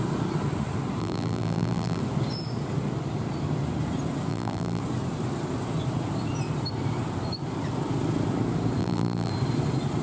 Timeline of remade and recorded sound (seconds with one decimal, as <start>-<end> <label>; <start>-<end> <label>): 0.0-1.0 recorded; 1.0-2.0 remade; 2.0-4.3 recorded; 4.3-4.8 remade; 4.8-8.8 recorded; 8.8-9.3 remade; 9.3-10.0 recorded